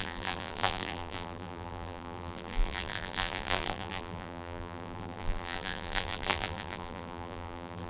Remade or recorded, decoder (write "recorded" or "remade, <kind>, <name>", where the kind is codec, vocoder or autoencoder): remade, vocoder, BigVGAN v2